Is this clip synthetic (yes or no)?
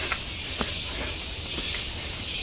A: no